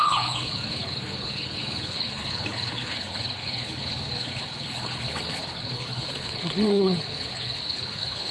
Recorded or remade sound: remade